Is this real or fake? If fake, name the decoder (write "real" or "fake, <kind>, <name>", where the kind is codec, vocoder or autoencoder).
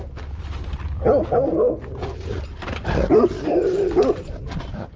fake, vocoder, BigVGAN v2